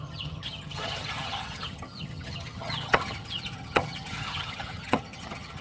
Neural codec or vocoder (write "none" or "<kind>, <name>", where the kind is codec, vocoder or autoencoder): vocoder, HiFi-GAN